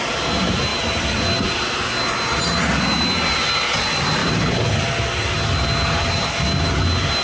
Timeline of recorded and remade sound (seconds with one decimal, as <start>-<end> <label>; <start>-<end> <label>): 0.0-7.2 recorded